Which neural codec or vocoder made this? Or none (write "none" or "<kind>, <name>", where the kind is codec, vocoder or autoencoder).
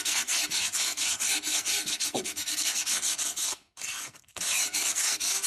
codec, SNAC